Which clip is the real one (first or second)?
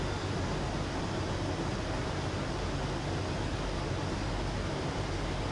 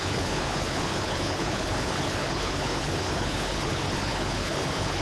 first